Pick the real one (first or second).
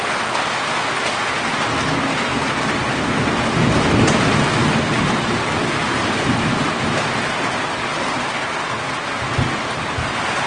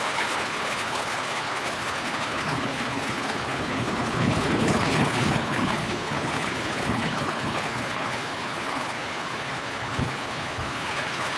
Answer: first